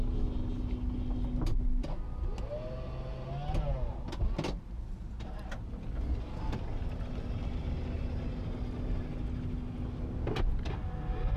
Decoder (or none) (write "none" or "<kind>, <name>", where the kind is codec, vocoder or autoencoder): none